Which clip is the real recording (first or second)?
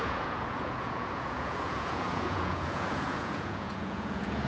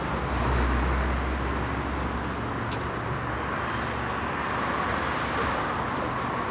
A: second